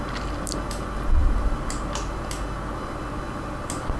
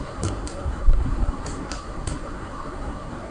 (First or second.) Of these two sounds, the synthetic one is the second